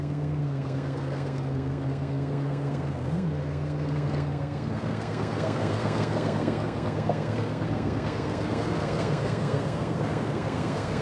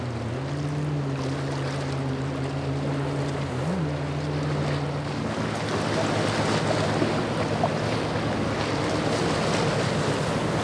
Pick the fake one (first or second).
first